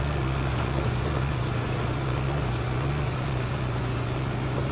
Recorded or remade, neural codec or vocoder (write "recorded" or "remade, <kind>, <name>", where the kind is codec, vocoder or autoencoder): remade, vocoder, Vocos